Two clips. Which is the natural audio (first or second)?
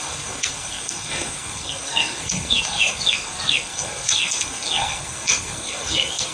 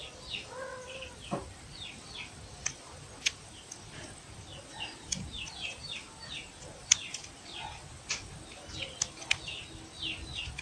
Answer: second